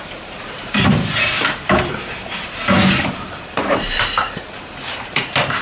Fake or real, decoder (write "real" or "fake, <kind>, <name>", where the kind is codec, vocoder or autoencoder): fake, vocoder, BigVGAN v2